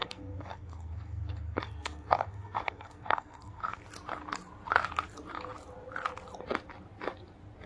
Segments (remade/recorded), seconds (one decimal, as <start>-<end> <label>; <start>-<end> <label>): 0.0-3.8 remade; 3.8-7.7 recorded